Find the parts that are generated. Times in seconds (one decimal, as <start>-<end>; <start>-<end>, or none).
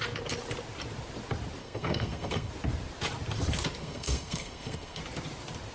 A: 1.6-2.5; 3.8-5.0